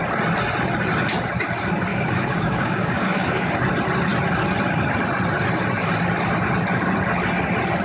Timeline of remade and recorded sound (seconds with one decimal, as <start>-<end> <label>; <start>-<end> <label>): 0.0-1.9 recorded; 1.9-3.5 remade; 3.5-7.8 recorded